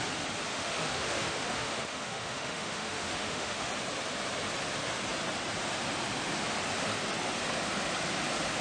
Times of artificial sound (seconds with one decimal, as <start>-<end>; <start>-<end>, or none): 0.5-3.7